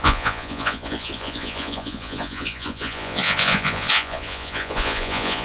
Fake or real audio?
fake